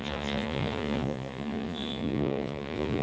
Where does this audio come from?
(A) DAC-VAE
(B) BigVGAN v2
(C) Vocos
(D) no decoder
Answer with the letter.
C